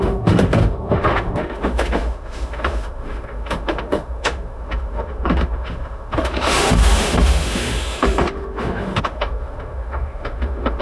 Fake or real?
fake